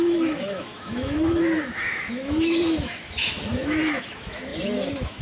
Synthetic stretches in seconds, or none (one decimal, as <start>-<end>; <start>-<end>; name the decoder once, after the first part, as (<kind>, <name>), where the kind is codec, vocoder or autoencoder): 0.0-5.2 (autoencoder, DAC-VAE)